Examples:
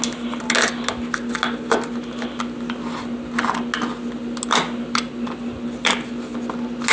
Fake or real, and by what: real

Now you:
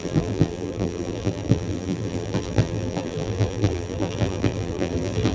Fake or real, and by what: fake, vocoder, BigVGAN v2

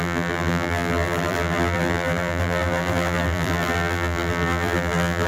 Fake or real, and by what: fake, vocoder, BigVGAN v2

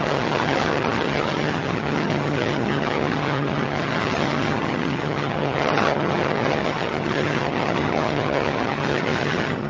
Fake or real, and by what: fake, vocoder, HiFi-GAN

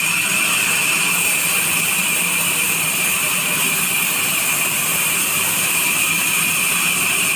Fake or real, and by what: real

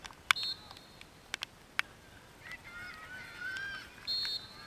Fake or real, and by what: real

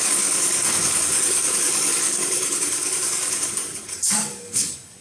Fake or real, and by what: fake, codec, DAC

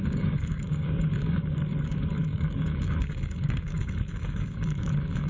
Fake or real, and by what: fake, codec, DAC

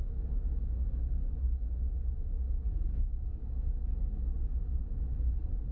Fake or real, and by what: real